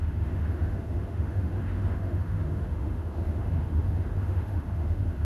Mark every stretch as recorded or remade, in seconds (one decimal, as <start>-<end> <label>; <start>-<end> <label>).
0.0-5.2 remade